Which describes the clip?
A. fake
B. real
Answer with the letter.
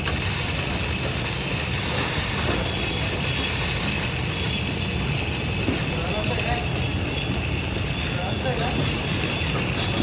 B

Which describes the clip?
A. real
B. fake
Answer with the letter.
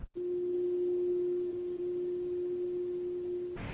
A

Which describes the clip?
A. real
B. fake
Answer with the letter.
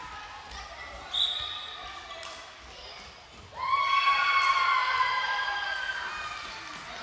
A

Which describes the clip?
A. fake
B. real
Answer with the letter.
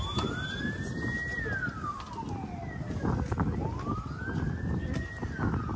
B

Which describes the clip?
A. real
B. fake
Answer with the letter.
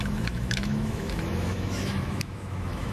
B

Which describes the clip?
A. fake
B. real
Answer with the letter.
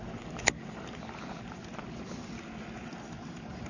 B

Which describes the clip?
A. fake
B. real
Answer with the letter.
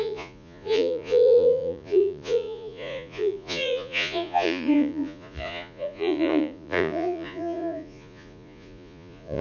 A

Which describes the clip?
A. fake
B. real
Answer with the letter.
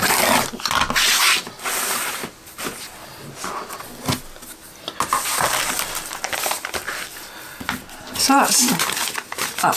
B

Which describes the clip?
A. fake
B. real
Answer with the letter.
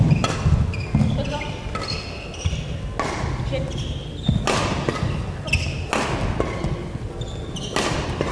B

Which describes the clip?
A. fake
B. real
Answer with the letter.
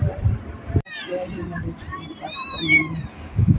A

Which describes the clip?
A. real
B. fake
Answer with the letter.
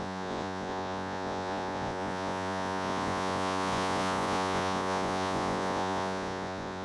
B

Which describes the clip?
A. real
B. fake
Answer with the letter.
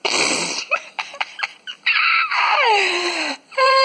B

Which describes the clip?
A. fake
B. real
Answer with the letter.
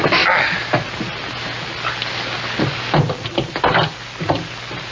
B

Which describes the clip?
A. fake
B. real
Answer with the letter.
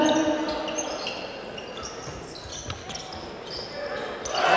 B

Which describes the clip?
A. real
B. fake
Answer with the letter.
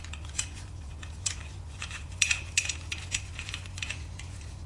B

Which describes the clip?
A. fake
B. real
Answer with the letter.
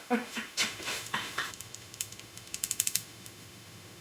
A